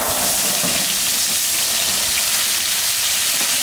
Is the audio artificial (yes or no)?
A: no